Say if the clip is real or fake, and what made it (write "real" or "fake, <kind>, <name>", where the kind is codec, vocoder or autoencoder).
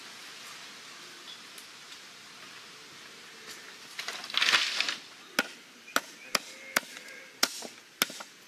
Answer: real